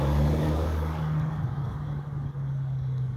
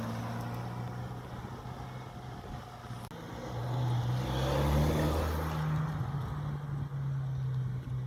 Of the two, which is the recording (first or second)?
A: second